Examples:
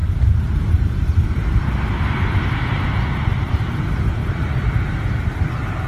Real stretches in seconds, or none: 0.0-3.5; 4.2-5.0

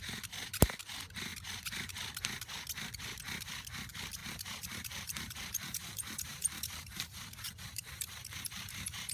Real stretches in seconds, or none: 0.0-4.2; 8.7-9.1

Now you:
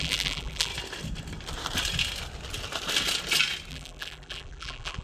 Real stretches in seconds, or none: 0.7-3.7

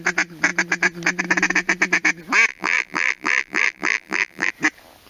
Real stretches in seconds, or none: 0.0-2.5; 4.5-5.1

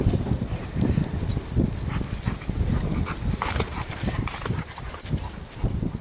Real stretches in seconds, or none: 0.0-2.7; 4.9-6.0

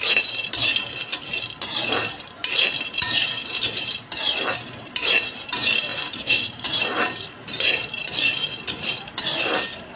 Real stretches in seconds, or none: 1.0-1.7

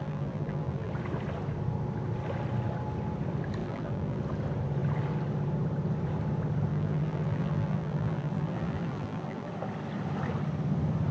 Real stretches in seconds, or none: 0.9-3.6; 4.2-6.7; 9.5-11.1

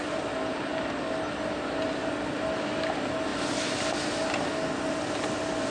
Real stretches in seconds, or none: 0.0-5.7